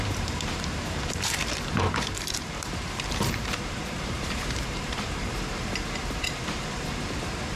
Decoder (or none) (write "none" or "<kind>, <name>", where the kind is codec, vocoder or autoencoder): vocoder, BigVGAN v2